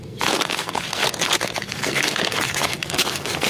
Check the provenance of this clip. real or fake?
fake